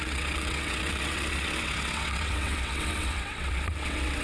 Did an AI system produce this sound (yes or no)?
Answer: yes